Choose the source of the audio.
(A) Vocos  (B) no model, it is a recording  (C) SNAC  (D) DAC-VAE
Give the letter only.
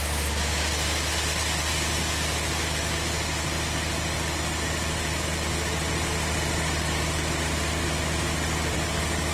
B